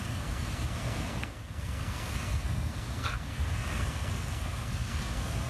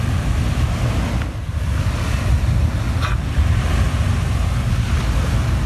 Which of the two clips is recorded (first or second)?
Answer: second